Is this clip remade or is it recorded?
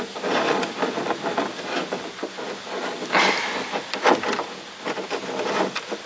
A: recorded